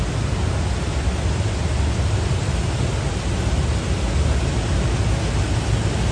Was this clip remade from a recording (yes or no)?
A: no